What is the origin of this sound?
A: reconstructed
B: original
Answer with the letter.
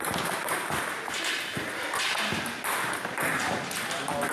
B